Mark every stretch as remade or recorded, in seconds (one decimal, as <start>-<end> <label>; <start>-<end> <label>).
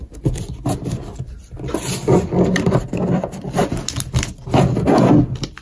0.0-5.6 recorded